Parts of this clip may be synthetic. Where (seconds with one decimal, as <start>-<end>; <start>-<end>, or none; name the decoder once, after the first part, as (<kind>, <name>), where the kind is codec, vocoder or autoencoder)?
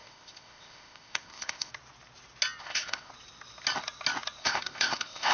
0.0-1.7 (codec, ZipCodec); 2.6-3.1; 4.4-5.3